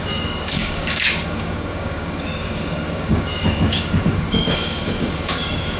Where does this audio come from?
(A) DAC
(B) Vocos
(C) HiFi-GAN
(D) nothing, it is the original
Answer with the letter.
A